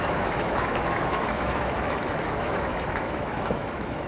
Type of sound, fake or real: fake